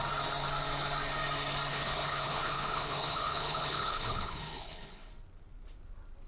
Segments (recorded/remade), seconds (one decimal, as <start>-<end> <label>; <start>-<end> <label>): 0.0-1.7 recorded; 1.7-5.1 remade; 5.1-6.3 recorded